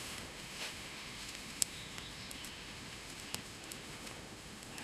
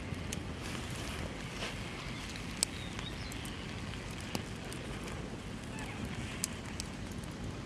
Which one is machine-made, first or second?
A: first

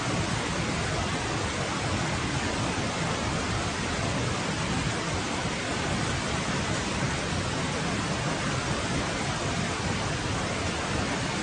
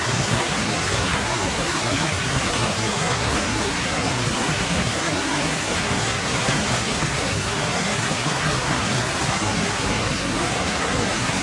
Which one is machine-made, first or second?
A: second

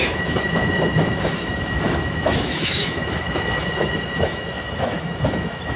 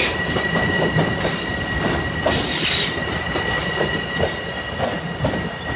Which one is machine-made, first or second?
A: first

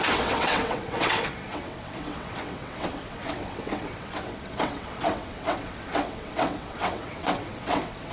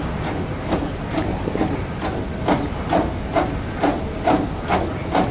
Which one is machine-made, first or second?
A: first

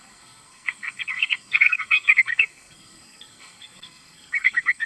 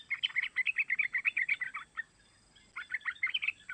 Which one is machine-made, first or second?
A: first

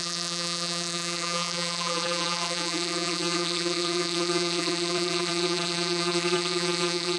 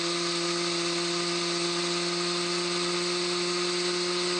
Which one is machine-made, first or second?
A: first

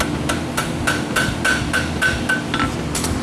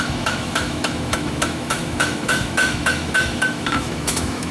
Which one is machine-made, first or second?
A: second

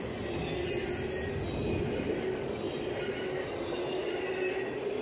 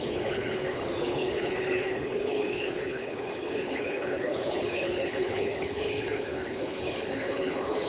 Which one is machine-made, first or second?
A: second